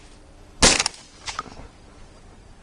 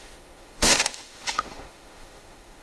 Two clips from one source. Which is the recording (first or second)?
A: first